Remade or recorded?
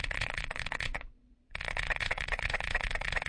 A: remade